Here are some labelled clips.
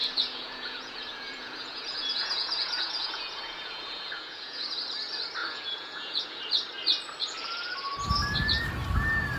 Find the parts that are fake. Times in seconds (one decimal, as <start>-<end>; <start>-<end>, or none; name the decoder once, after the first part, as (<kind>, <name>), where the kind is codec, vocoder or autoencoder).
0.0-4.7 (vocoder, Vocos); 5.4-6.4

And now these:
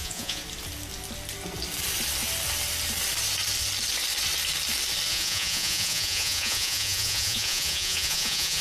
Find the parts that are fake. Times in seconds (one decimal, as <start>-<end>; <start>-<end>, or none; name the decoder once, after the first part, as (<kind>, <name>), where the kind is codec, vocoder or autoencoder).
0.0-0.4 (vocoder, Vocos); 5.1-8.6

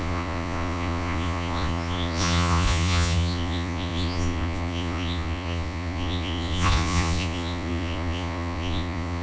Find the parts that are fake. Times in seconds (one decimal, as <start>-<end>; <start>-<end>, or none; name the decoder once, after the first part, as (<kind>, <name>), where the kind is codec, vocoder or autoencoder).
0.0-9.2 (vocoder, Vocos)

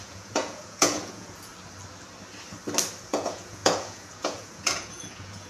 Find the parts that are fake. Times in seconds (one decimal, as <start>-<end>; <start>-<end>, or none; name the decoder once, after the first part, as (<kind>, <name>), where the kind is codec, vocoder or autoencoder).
0.0-1.5 (vocoder, Vocos); 3.0-5.5

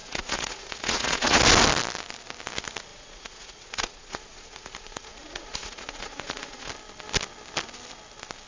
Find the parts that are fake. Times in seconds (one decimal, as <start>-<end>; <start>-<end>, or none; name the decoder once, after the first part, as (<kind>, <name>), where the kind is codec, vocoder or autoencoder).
0.0-1.4 (vocoder, Vocos); 2.9-6.7

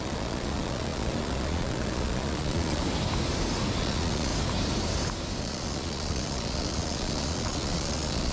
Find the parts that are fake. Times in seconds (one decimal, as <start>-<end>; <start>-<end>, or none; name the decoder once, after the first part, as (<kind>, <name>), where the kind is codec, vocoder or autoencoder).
0.0-2.8 (vocoder, Vocos); 3.8-4.3; 5.4-8.3

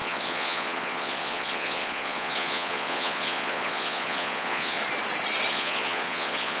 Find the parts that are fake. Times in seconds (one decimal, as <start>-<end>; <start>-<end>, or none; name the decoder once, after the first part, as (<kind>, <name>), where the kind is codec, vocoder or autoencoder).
0.0-4.8 (vocoder, Vocos); 5.5-6.6